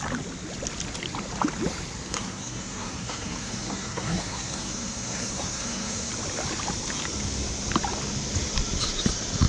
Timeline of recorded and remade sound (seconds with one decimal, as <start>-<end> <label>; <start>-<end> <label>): 0.0-2.1 recorded; 2.1-6.1 remade; 6.1-9.5 recorded